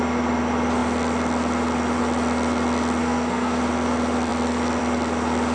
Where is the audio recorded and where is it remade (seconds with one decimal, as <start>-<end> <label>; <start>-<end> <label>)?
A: 0.0-3.0 recorded; 3.0-3.6 remade; 3.6-5.5 recorded